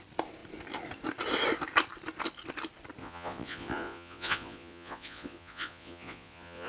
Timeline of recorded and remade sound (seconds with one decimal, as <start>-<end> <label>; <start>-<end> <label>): 0.0-3.0 recorded; 3.0-6.7 remade